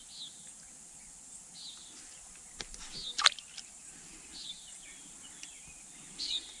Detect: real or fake real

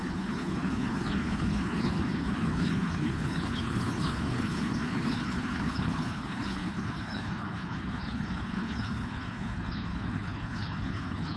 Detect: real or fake fake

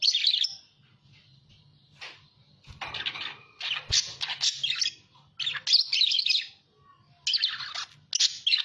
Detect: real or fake real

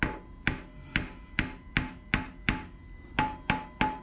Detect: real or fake real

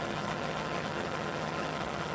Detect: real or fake fake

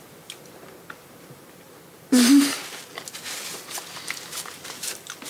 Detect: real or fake real